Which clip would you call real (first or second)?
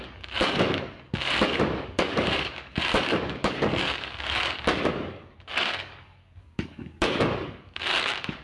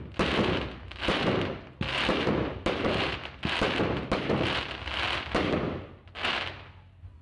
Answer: second